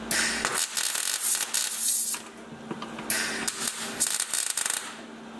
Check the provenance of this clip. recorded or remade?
recorded